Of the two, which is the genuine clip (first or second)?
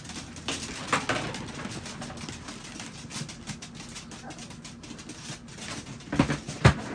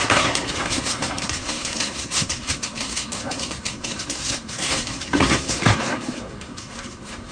first